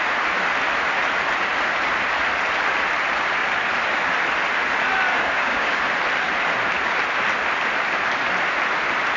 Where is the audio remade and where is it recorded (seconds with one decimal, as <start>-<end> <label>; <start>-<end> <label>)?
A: 0.0-5.1 recorded; 5.1-5.8 remade; 5.8-9.2 recorded